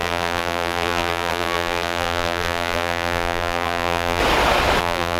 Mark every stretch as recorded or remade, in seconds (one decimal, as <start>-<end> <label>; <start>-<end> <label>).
0.0-4.2 remade; 4.2-4.8 recorded; 4.8-5.2 remade